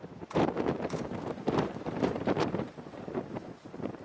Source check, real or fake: fake